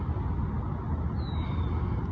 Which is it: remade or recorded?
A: recorded